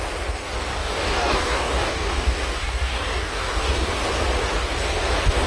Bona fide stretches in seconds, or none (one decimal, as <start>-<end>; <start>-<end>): 0.0-0.7; 3.9-5.5